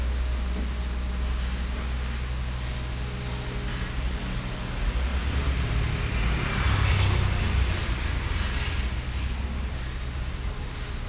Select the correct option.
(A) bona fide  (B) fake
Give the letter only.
A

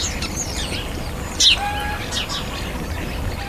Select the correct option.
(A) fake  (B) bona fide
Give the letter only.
B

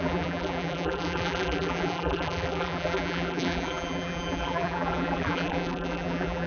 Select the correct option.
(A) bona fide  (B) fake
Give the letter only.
B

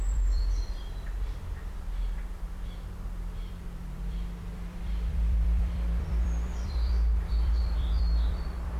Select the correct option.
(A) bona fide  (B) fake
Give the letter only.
B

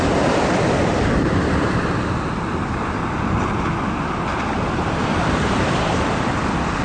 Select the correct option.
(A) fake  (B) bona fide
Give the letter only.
A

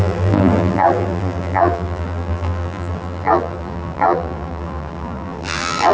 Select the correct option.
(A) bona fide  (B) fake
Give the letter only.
B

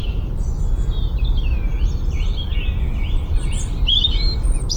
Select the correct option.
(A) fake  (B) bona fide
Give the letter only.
B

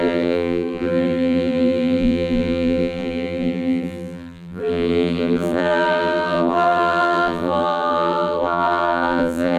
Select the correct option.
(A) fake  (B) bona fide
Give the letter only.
A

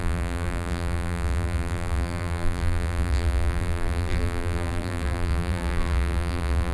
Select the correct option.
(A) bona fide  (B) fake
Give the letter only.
B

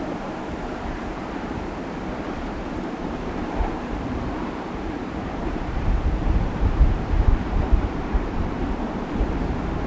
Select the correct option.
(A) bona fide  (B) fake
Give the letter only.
B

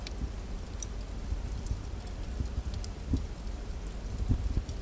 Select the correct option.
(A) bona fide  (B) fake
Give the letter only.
A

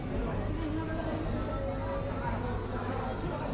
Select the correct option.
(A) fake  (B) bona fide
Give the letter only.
B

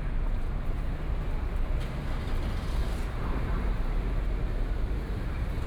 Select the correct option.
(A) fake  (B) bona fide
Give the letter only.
A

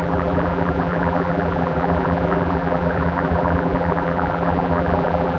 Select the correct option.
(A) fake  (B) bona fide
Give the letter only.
A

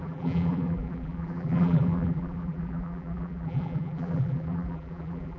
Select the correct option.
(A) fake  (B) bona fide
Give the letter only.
A